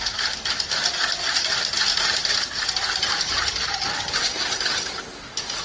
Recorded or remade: recorded